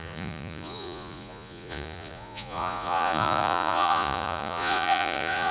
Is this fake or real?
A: fake